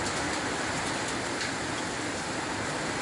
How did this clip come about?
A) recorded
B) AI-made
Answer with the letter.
A